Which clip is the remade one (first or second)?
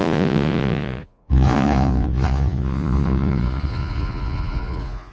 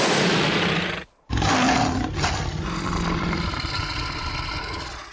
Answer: first